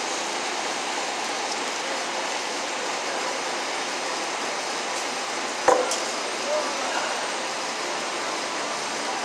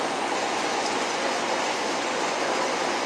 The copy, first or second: second